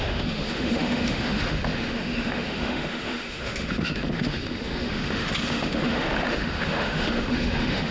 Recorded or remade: remade